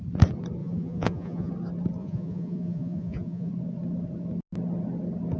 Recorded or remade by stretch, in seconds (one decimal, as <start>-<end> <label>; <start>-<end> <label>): 0.0-0.6 recorded; 0.6-1.5 remade; 1.5-2.0 recorded; 2.0-3.5 remade; 3.5-5.4 recorded

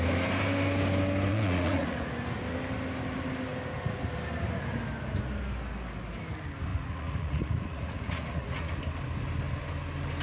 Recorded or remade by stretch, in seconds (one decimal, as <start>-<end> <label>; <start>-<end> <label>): 0.0-1.3 recorded; 1.3-2.1 remade; 2.1-6.7 recorded; 6.7-8.8 remade; 8.8-10.2 recorded